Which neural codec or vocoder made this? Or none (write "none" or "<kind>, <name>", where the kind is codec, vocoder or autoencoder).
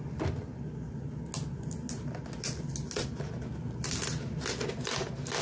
none